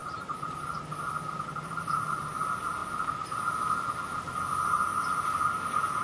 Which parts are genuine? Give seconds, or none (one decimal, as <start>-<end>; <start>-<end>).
0.8-6.0